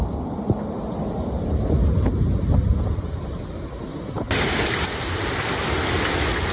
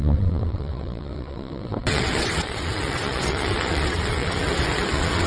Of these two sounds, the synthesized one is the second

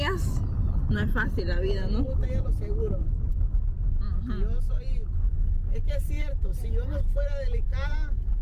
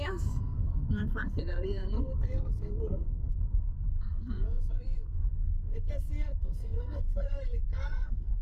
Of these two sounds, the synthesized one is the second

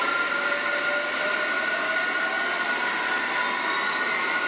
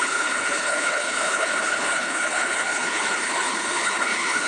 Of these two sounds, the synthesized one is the second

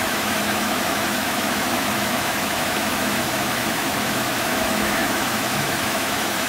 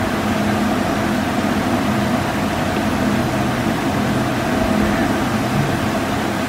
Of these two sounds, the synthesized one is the first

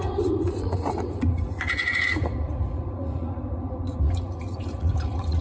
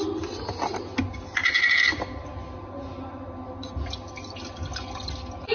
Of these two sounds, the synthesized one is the first